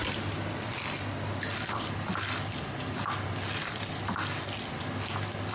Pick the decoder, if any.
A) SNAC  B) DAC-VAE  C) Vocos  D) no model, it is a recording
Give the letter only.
D